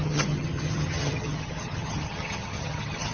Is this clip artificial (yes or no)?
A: yes